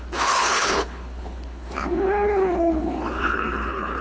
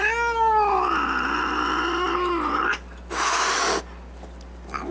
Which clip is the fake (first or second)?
first